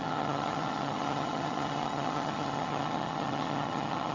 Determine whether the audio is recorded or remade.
remade